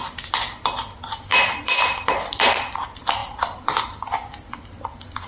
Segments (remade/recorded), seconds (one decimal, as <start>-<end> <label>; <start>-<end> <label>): 0.0-1.3 recorded; 1.3-2.4 remade; 2.4-3.2 recorded; 3.2-3.8 remade; 3.8-5.3 recorded